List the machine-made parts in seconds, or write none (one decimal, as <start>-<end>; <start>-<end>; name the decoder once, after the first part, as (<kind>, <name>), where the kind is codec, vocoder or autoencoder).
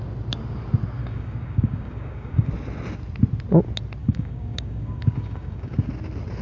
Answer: 1.0-2.5 (codec, DAC); 4.0-5.9